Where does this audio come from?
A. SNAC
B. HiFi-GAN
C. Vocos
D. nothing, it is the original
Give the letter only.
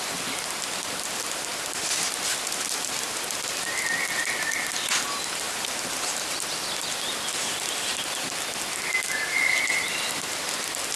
D